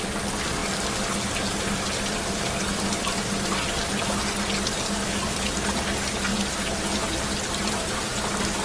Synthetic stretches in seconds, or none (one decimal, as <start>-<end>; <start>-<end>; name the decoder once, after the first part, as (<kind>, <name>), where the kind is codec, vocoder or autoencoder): none